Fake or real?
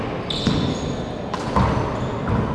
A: real